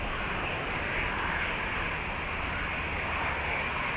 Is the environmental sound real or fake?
real